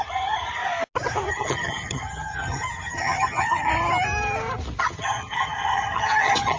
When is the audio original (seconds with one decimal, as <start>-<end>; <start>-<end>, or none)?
0.6-1.3; 3.7-4.8